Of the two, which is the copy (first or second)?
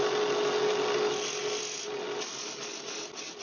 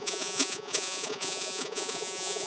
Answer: second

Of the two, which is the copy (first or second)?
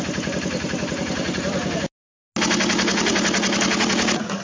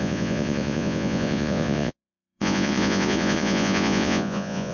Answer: second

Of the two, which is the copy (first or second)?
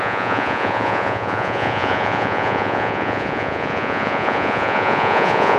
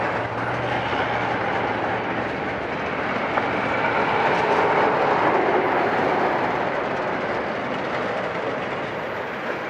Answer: first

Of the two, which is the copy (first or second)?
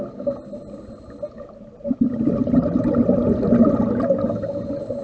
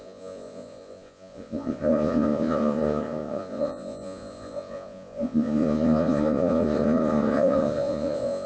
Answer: second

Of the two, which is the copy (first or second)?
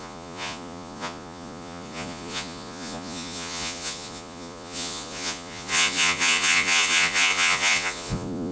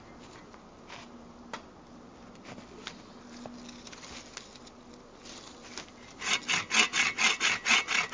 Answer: first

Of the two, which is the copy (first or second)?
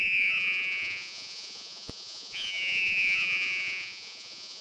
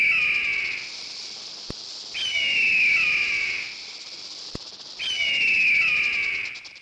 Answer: first